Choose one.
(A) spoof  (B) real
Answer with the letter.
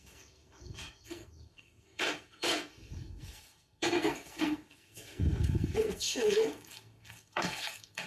A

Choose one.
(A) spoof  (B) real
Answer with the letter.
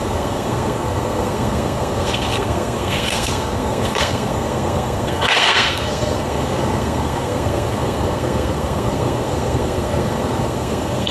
A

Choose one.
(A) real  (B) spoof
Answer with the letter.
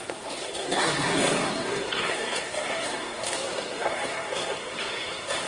B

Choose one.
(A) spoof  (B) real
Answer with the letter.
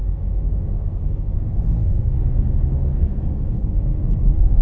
A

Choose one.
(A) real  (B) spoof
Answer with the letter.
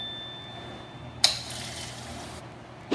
A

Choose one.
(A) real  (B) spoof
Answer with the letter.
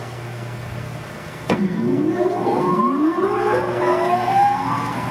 B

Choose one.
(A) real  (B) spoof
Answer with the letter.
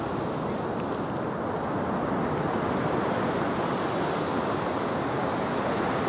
A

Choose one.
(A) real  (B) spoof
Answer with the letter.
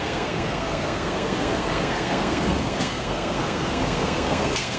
B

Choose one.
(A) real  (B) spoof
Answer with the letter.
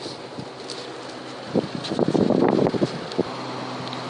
A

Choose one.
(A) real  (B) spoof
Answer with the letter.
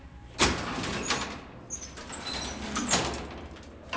A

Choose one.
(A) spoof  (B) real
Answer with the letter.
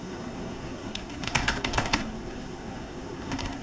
A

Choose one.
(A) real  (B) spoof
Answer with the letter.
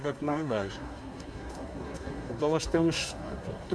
B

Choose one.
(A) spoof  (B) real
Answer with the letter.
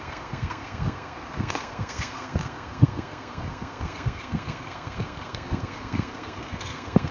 A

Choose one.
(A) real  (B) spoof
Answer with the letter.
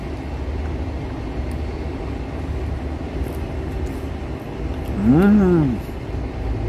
A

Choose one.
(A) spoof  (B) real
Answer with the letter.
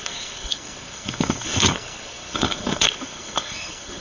A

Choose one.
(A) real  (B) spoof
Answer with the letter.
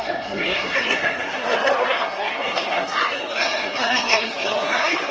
B